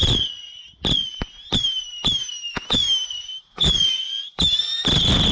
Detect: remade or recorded recorded